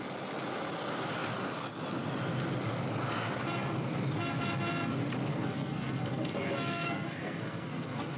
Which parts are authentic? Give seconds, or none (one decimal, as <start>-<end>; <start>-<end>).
0.0-5.3